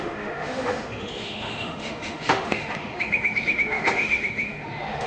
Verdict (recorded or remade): remade